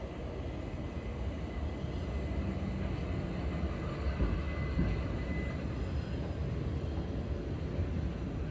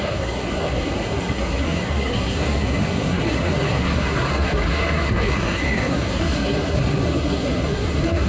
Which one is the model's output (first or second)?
second